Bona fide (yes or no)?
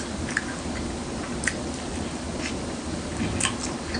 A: no